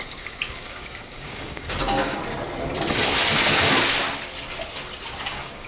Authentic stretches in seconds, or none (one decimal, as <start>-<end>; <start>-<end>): 2.2-5.2